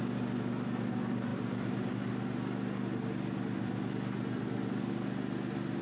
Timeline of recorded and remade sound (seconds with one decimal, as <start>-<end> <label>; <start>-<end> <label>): 0.0-1.3 recorded; 1.3-1.9 remade; 1.9-5.8 recorded